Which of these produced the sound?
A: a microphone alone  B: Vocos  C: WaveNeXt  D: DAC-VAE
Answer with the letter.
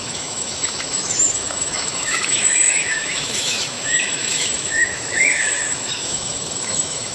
D